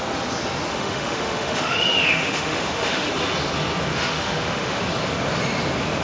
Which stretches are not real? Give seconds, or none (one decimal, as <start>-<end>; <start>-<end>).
0.7-3.1; 3.9-4.8